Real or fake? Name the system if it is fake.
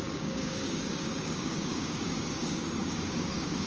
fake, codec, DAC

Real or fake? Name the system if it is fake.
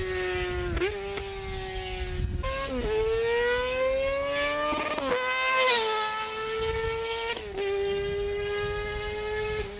real